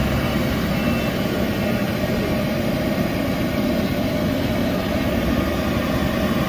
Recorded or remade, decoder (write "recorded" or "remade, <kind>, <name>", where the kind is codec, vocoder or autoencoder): recorded